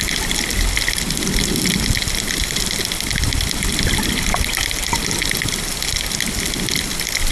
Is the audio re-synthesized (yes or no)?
no